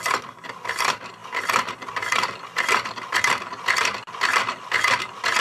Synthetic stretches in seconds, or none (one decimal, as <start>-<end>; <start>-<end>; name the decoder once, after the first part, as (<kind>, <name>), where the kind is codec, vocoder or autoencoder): none